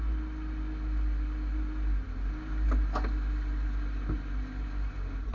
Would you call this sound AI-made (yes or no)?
no